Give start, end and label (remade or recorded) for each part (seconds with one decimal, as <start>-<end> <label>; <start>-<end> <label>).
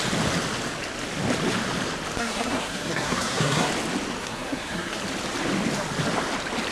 0.0-2.2 recorded; 2.2-3.7 remade; 3.7-4.2 recorded; 4.2-5.0 remade; 5.0-6.7 recorded